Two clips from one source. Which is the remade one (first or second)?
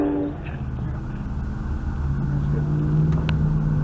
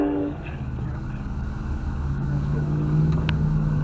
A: second